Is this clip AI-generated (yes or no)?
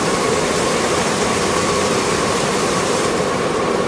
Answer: yes